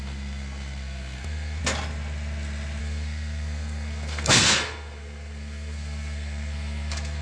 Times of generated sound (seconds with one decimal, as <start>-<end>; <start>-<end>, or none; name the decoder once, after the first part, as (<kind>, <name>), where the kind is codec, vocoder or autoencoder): 0.0-1.6 (codec, SNAC); 2.8-7.2